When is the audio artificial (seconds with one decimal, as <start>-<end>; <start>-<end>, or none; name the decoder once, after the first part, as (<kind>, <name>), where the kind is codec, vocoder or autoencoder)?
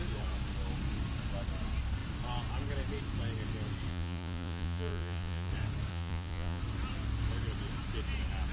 3.9-5.5 (vocoder, Vocos); 5.9-6.6